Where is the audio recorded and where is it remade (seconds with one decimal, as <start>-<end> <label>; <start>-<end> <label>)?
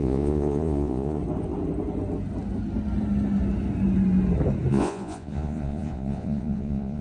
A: 0.0-1.2 remade; 1.2-4.7 recorded; 4.7-7.0 remade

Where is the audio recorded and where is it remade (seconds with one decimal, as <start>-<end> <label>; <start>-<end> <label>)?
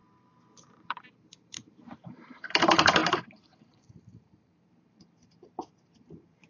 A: 0.0-6.5 remade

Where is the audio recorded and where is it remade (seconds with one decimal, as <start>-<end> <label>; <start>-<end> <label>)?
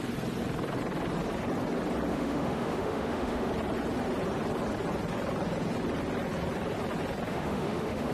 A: 0.0-2.1 recorded; 2.1-3.5 remade; 3.5-7.3 recorded; 7.3-8.1 remade